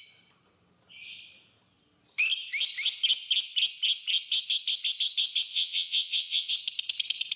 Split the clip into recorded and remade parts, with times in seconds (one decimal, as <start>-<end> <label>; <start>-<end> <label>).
0.0-5.5 recorded; 5.5-6.5 remade; 6.5-7.4 recorded